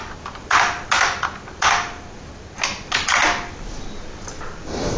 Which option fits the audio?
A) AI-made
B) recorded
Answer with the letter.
B